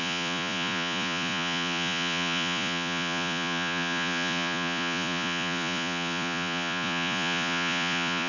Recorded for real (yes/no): no